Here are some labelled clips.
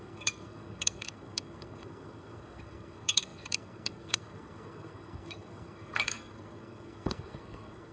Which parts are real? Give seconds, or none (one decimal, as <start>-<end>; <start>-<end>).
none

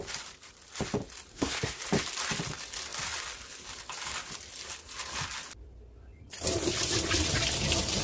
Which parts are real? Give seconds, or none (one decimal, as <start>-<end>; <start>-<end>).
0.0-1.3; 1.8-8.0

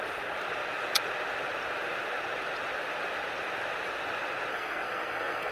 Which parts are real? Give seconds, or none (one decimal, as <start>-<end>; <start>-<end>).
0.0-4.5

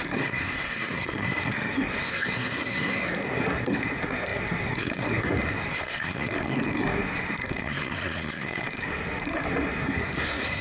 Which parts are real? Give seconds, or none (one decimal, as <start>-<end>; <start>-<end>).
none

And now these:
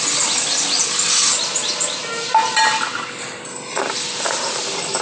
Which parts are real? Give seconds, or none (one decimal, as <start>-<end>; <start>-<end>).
0.0-5.0

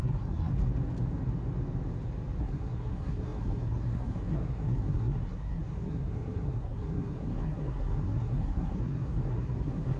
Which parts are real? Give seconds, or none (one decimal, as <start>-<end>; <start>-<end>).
0.5-2.4

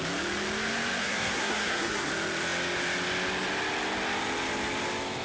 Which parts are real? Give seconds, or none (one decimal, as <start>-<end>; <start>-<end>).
0.0-1.0; 2.1-5.2

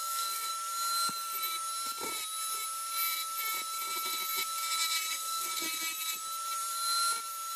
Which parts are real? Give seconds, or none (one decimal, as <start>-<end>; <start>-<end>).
0.5-5.1; 5.5-7.6